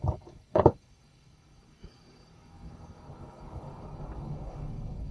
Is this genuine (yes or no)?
no